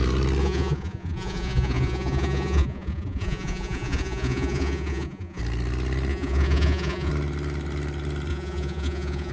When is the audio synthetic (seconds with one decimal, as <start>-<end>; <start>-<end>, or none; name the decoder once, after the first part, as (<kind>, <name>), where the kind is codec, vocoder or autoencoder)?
0.4-5.4 (vocoder, Vocos); 6.1-7.1; 8.3-9.3

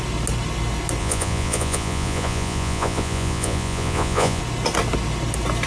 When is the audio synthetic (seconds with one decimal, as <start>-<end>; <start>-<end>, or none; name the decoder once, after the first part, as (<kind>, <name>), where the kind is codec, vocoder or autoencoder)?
1.0-4.4 (vocoder, Vocos)